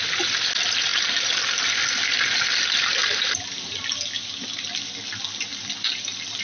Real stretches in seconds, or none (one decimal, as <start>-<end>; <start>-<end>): 0.0-6.4